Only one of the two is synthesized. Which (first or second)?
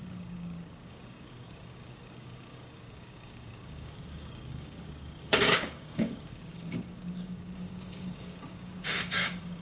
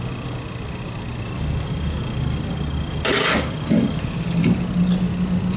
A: first